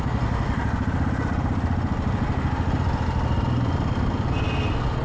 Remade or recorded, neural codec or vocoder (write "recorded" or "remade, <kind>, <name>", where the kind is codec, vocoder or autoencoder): recorded